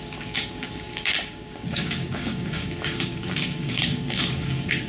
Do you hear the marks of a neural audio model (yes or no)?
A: yes